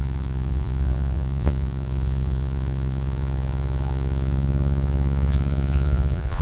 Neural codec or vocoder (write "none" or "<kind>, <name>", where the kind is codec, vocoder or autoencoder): vocoder, Vocos